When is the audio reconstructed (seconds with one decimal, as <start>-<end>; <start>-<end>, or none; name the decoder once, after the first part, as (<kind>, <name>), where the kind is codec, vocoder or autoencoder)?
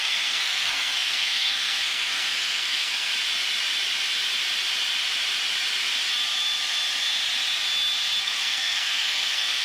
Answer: 0.0-3.1 (codec, SNAC); 8.2-9.6